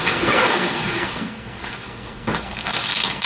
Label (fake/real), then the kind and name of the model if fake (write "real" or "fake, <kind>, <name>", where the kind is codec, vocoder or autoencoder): fake, codec, SNAC